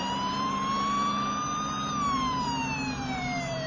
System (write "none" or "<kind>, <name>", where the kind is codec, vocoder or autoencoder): vocoder, BigVGAN v2